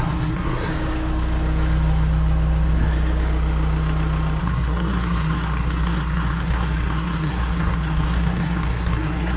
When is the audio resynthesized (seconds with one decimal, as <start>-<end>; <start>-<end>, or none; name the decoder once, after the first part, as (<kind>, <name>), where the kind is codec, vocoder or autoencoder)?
0.0-0.7 (codec, SNAC); 4.4-9.4